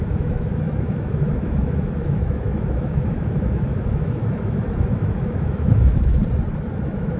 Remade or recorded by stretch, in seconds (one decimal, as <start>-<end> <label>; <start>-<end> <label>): 0.0-6.2 remade; 6.2-6.7 recorded; 6.7-7.2 remade